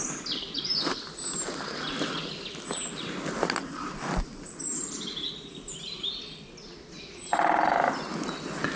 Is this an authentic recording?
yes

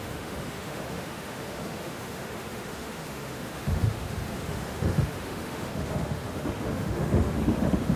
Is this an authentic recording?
no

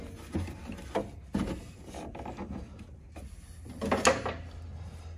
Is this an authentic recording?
yes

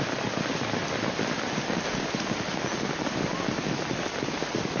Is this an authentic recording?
yes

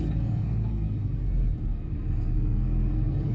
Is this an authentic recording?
no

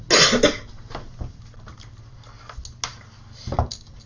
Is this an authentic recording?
yes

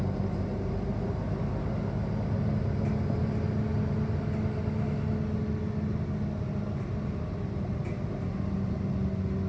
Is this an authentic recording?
yes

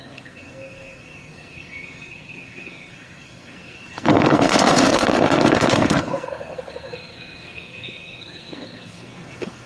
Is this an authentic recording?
no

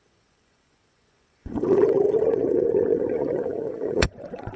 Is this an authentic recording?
no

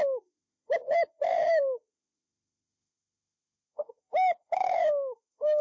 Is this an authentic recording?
no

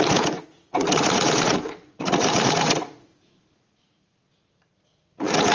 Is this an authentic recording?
no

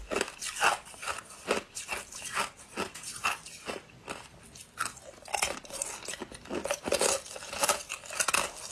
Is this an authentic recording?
yes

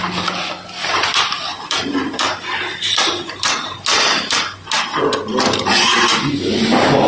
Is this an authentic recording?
yes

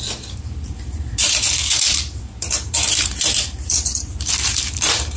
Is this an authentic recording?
no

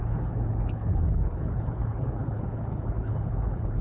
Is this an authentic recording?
no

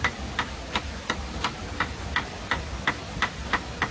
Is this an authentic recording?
yes